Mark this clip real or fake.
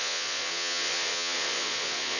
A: fake